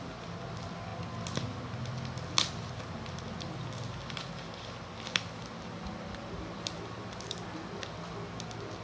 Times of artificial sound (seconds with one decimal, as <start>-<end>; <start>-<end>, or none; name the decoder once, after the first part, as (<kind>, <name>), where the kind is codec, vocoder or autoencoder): none